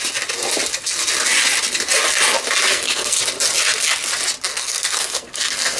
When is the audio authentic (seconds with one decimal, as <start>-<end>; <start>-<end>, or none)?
0.0-2.7; 3.2-4.5